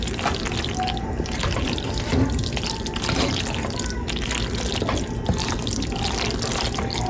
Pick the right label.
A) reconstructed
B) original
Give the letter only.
B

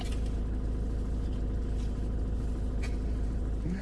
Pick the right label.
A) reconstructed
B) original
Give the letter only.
A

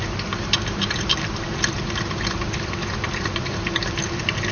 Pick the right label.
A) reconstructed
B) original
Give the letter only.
B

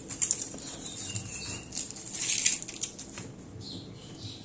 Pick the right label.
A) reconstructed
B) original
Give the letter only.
B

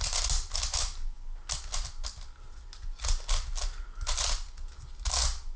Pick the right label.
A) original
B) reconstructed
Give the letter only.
A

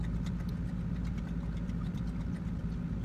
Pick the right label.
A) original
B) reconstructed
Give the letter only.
A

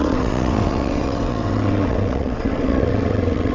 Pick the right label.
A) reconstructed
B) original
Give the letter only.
A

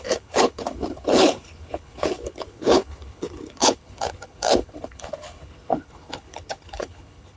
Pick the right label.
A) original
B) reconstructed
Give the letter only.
B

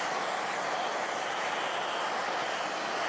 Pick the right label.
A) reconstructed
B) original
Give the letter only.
B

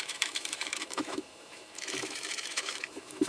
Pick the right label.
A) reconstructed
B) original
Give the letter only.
A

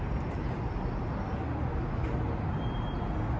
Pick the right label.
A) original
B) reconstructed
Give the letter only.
A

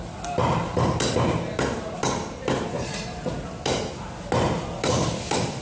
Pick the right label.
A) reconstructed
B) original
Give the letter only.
B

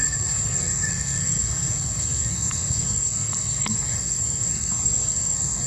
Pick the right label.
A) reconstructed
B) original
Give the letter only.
A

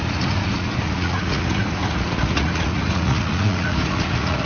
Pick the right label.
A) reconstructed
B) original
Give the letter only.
A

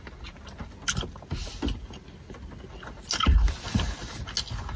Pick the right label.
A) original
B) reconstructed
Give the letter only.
A